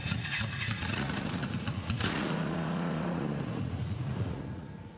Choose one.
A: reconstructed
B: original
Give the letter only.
A